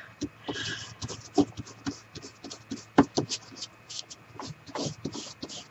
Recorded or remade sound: recorded